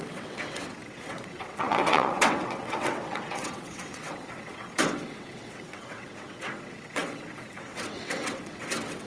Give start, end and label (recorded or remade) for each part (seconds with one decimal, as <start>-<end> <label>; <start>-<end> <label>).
0.0-9.1 remade